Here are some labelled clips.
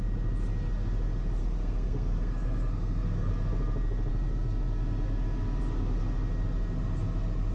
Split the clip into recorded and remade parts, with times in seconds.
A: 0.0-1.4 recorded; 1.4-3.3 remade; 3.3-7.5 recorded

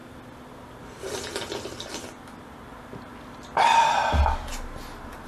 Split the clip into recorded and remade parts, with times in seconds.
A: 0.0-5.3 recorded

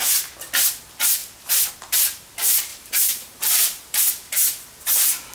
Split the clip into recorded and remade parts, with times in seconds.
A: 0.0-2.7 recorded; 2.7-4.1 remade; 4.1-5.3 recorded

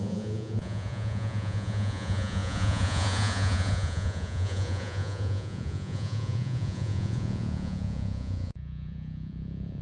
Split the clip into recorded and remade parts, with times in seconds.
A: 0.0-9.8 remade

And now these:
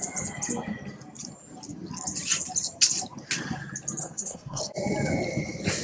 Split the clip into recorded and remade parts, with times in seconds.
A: 0.0-4.0 recorded; 4.0-4.6 remade; 4.6-5.8 recorded